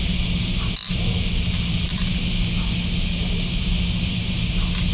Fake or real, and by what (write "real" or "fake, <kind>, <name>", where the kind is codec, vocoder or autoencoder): real